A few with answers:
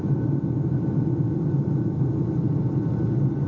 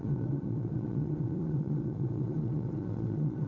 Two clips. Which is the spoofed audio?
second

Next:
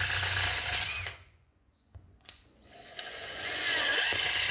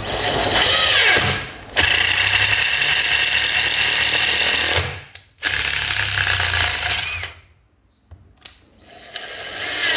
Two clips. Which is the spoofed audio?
first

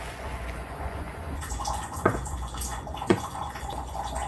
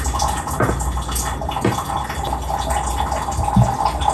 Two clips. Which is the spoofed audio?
first